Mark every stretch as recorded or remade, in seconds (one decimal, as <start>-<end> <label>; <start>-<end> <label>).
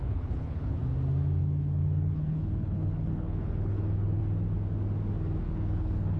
0.0-0.8 remade; 0.8-1.4 recorded; 1.4-4.2 remade; 4.2-5.4 recorded; 5.4-6.2 remade